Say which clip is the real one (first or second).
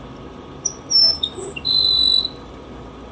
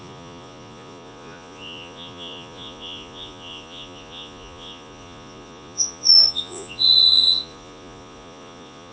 first